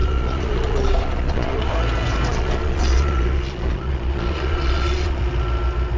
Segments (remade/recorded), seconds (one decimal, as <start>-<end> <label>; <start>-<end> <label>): 0.0-1.7 remade; 1.7-2.3 recorded; 2.3-5.2 remade; 5.2-6.0 recorded